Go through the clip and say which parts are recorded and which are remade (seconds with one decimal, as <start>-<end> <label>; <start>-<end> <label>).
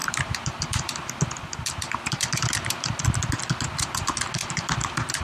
0.0-3.1 remade; 3.1-4.4 recorded; 4.4-5.2 remade